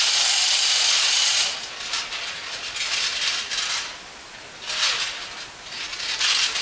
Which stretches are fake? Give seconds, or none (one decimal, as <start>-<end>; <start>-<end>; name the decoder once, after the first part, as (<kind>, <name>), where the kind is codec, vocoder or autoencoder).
none